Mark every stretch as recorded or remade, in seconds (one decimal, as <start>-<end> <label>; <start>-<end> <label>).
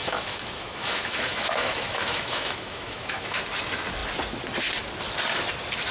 0.0-3.5 remade; 3.5-5.9 recorded